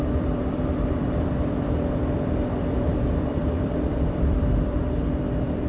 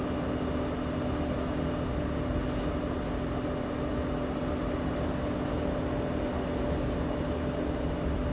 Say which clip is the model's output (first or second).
first